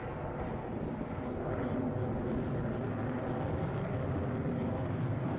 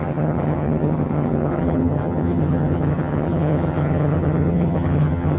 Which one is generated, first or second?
second